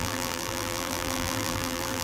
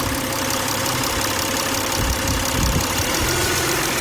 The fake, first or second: first